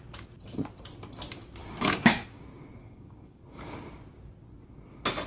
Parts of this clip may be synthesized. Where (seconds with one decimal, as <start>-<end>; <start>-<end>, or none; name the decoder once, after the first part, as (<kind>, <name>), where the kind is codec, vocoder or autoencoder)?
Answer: 1.6-2.4 (codec, DAC); 2.8-3.4

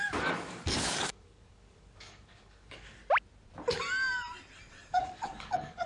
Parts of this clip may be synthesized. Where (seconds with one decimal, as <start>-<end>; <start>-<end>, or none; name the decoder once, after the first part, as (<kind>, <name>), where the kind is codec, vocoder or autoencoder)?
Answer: 0.0-3.0 (codec, DAC); 4.9-5.9

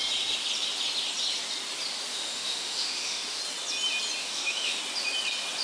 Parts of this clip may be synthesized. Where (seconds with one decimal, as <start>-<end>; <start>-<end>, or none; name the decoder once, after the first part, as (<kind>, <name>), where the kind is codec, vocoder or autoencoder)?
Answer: 2.1-3.4 (autoencoder, DAC-VAE); 4.2-4.8